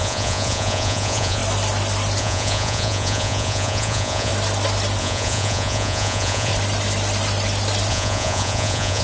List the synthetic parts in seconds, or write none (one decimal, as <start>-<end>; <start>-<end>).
0.0-1.4; 2.2-4.3; 5.0-6.5; 7.9-9.0